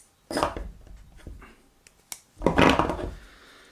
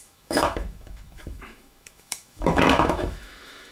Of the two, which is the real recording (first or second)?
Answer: first